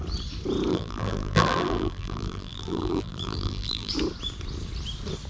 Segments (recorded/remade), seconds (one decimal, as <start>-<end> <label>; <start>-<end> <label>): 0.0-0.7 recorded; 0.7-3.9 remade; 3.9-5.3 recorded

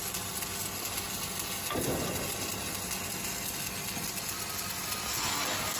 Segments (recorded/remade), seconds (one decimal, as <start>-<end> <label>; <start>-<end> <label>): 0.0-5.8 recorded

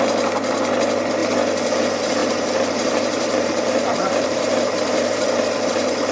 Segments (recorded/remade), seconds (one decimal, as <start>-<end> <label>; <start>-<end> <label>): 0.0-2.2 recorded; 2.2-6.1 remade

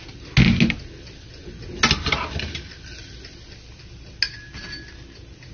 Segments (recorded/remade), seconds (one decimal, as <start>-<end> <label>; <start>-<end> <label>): 0.0-5.5 recorded

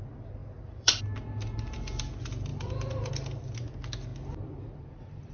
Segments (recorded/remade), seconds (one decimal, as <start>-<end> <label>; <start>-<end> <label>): 0.0-0.4 recorded; 0.4-1.0 remade; 1.0-2.5 recorded; 2.5-3.1 remade; 3.1-5.3 recorded